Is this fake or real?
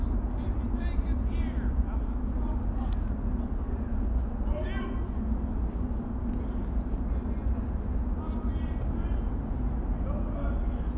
real